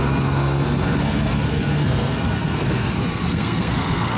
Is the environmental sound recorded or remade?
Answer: remade